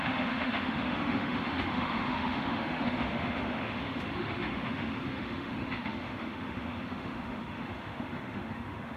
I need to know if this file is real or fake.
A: fake